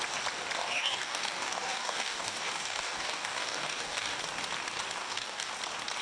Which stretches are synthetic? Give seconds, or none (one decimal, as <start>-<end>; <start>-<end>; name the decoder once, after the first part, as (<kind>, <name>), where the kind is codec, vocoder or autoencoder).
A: 0.6-4.2 (codec, DAC); 5.0-5.5